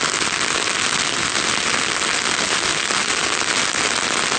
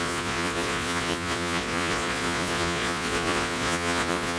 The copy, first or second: second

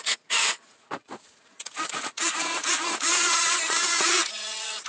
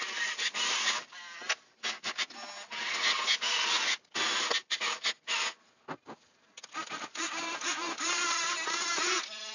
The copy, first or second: first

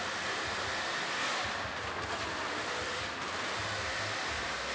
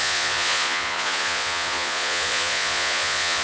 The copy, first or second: second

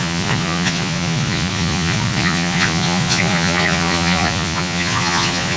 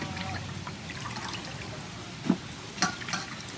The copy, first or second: first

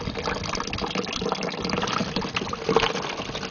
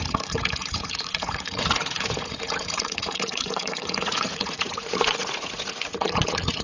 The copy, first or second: second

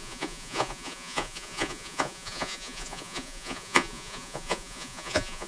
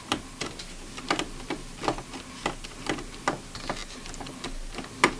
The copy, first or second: first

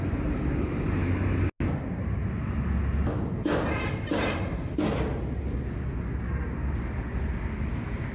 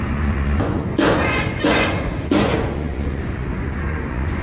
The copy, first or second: second